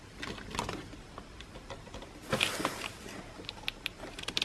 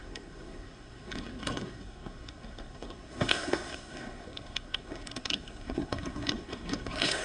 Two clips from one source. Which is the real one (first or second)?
first